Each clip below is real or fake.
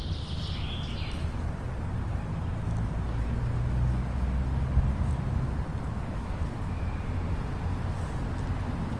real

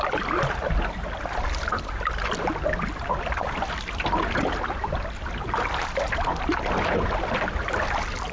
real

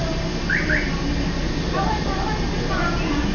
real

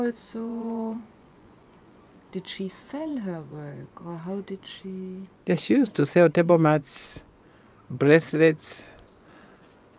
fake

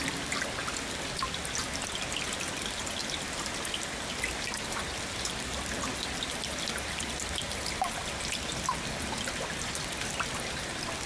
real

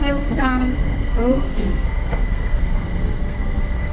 fake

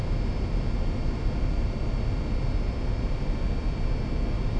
real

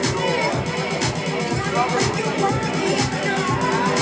real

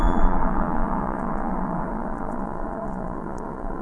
fake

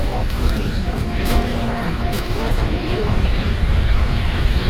fake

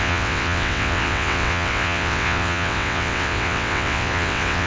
fake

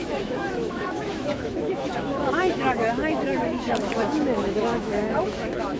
fake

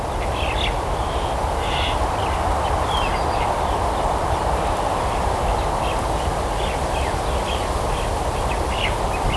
real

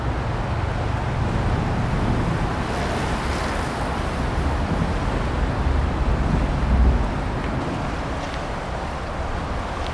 real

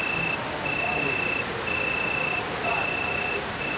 real